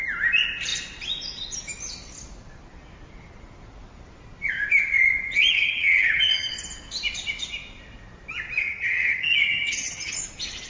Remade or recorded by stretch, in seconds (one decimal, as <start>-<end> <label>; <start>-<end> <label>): 0.0-5.5 recorded; 5.5-6.5 remade; 6.5-8.6 recorded; 8.6-10.2 remade; 10.2-10.7 recorded